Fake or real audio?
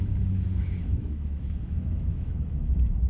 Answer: fake